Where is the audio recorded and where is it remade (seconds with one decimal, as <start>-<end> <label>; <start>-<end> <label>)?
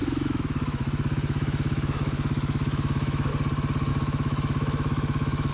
0.0-3.3 remade; 3.3-3.9 recorded; 3.9-5.5 remade